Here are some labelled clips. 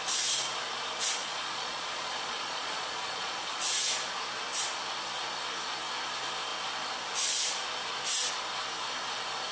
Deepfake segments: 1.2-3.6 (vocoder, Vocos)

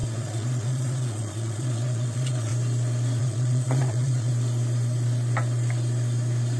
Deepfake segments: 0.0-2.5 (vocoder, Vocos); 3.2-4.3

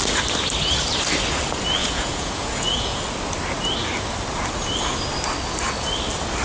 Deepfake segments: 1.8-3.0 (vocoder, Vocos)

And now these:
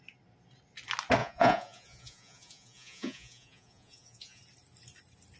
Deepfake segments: 1.2-4.4 (vocoder, Vocos)

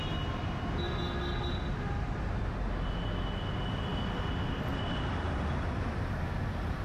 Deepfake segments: none

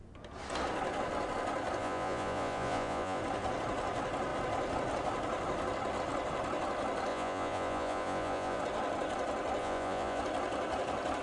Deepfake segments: 1.8-3.2 (vocoder, Vocos); 7.1-8.6; 9.6-10.2

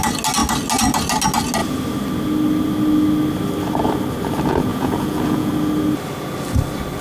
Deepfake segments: 4.7-5.5 (vocoder, Vocos)